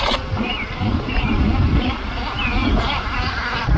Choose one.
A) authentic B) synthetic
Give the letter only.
A